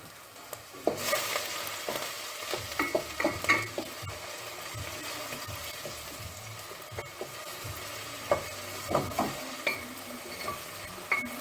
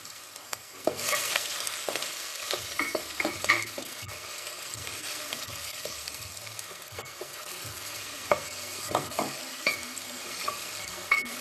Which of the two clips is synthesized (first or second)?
second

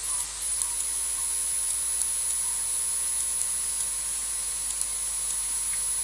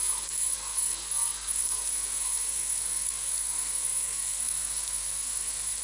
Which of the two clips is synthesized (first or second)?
second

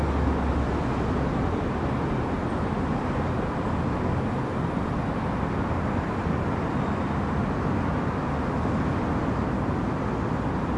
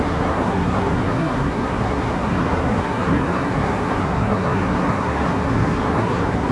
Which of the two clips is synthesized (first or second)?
second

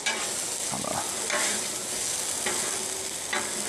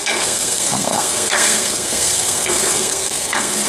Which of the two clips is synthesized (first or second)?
second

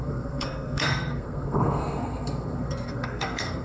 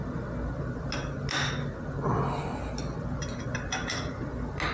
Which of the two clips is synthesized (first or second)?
first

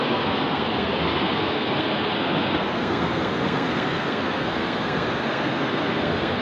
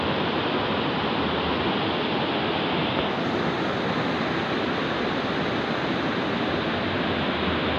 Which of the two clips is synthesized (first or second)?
first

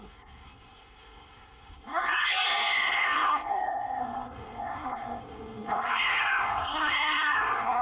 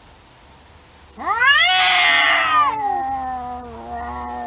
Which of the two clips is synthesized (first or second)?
first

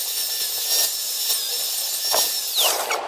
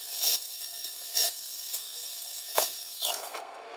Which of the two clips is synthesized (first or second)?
second